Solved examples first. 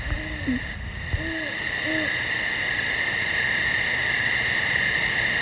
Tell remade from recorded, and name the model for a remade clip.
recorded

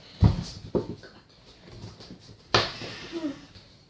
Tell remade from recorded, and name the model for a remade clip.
recorded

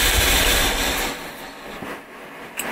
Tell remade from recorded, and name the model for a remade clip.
recorded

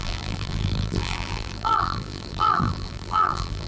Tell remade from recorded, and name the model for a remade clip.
remade, vocoder, BigVGAN v2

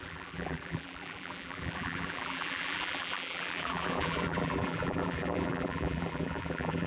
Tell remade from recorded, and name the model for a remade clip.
remade, vocoder, BigVGAN v2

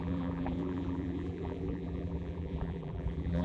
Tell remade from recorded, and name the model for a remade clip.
remade, vocoder, BigVGAN v2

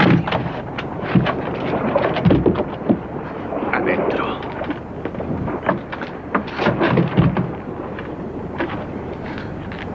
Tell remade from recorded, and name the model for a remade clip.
recorded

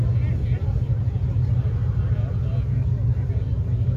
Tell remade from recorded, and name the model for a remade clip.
recorded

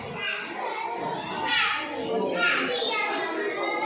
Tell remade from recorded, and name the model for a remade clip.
recorded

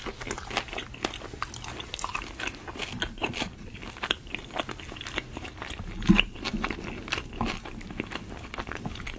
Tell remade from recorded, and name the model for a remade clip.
recorded